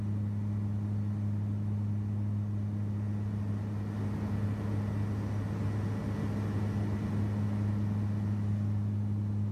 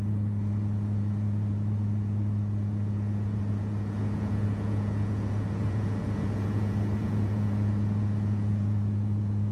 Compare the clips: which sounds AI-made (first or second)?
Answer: second